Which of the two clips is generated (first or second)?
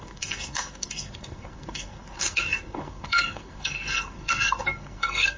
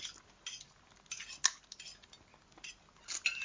first